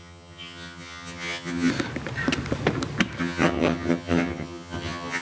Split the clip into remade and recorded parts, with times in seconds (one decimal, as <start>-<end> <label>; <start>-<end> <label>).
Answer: 0.0-1.7 remade; 1.7-3.2 recorded; 3.2-5.2 remade